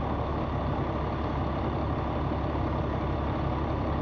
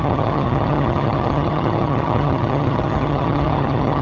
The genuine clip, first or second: first